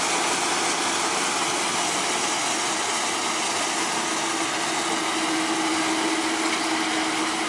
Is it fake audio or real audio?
real